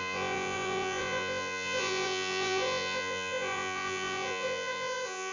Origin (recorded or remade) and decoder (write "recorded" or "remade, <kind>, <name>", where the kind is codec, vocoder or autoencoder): remade, vocoder, Vocos